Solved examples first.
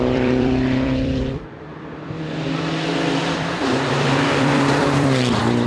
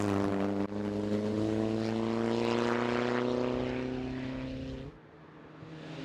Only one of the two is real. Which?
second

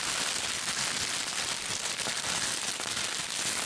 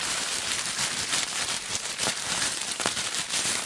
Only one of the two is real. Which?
first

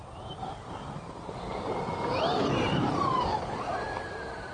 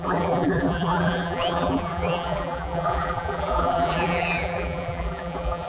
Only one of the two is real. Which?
first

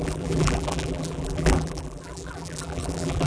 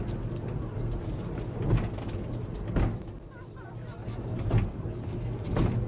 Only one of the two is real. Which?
second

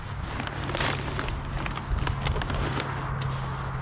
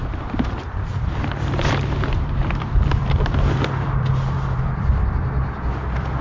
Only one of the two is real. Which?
first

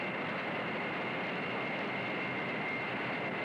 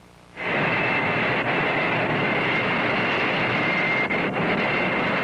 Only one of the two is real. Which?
first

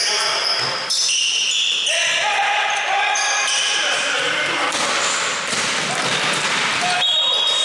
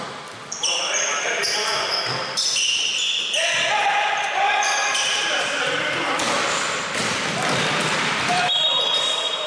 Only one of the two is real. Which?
first